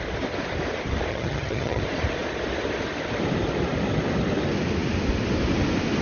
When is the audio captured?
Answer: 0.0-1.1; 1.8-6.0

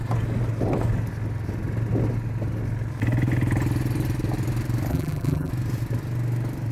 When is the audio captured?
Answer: 0.0-4.9; 5.5-6.7

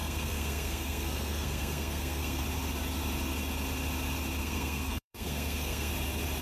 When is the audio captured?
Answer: 2.4-4.4; 5.9-6.4

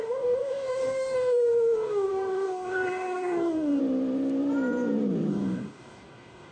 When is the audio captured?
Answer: 3.8-5.3

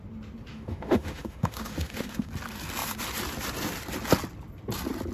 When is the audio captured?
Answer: 0.0-0.5; 2.3-5.1

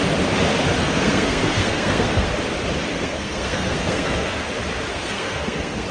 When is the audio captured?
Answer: 0.0-0.8; 2.3-2.9; 4.5-4.9

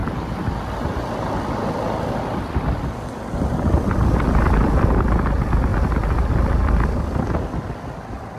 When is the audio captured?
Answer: 0.0-8.4